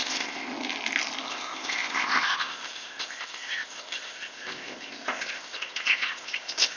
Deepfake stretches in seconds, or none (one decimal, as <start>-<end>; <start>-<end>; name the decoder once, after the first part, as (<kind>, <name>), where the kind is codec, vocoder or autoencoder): 0.0-0.5 (codec, ZipCodec); 1.3-6.8